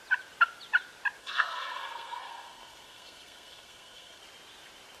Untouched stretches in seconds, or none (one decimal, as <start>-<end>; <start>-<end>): 0.0-1.2; 4.2-5.0